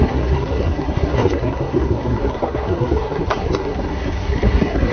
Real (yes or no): no